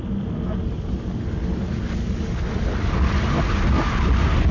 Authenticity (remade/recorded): recorded